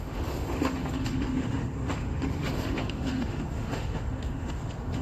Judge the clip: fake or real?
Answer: fake